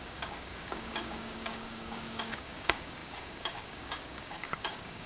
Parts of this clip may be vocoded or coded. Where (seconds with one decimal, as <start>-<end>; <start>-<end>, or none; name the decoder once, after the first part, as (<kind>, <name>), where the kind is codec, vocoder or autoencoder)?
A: 0.0-5.1 (codec, DAC)